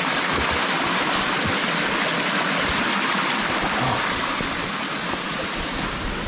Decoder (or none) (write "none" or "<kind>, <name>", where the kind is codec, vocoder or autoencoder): none